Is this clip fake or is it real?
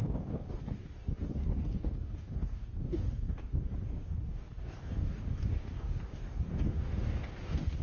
fake